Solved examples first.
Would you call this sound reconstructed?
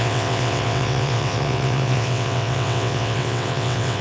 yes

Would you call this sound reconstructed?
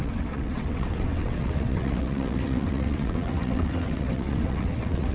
yes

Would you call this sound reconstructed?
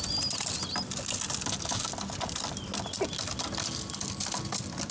no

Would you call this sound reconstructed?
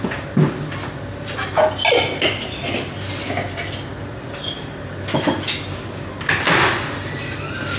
no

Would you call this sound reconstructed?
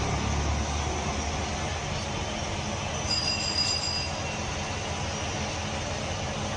no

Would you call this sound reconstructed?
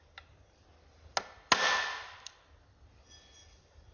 no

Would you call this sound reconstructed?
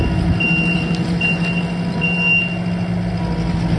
no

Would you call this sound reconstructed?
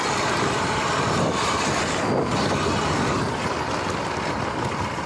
no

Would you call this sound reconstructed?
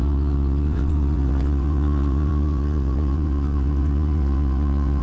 yes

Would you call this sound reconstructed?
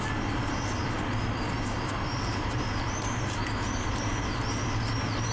no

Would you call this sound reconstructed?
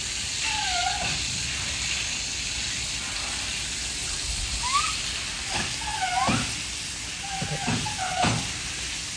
no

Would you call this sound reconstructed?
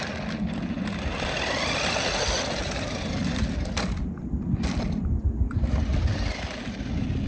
no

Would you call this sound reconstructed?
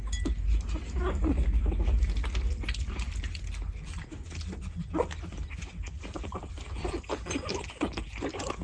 no